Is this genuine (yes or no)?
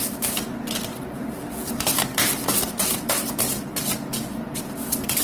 no